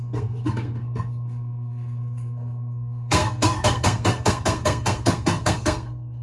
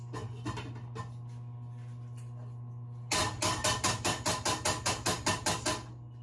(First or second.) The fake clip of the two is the first